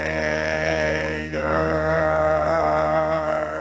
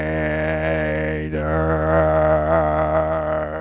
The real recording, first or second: second